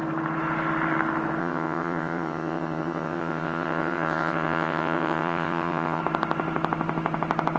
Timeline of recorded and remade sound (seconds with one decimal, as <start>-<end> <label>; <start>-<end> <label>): 0.0-1.4 recorded; 1.4-6.0 remade; 6.0-7.6 recorded